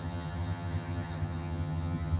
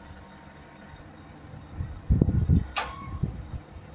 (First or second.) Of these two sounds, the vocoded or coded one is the first